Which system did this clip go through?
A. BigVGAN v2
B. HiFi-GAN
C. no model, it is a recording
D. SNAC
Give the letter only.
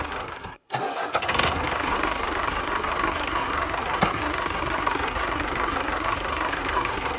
D